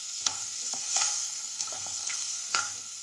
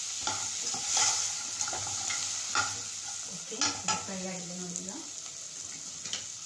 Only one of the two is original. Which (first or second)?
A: second